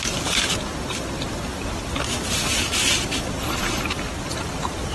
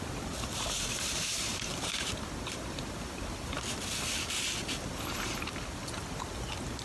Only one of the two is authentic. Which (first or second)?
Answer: second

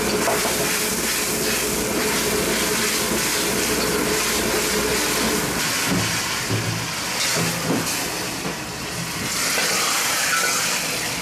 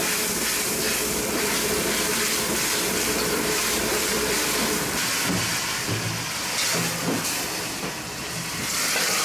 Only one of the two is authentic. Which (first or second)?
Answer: first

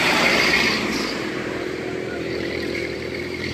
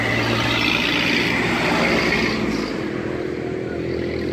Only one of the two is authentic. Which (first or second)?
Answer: second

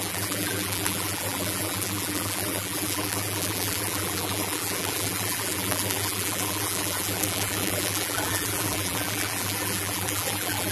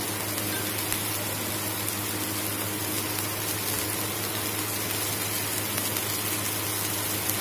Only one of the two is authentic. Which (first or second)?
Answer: second